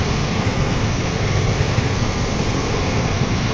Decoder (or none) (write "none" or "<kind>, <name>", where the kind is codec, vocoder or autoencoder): codec, SNAC